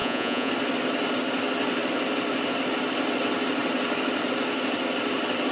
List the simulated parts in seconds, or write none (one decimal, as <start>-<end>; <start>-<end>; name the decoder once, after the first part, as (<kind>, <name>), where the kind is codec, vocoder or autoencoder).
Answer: 0.0-0.5 (vocoder, Vocos)